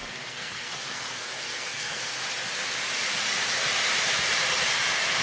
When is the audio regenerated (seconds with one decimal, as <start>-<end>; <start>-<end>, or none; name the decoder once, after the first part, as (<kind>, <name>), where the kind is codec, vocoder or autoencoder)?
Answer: 0.0-2.1 (codec, SNAC)